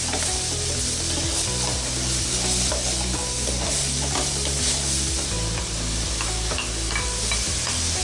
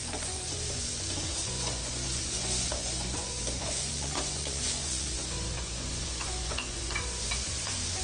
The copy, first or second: second